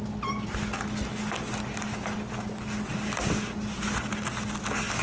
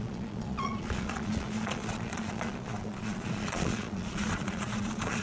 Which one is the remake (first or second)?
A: second